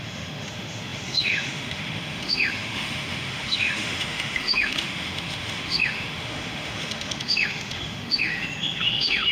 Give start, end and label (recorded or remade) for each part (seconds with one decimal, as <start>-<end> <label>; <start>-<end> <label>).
0.0-9.3 remade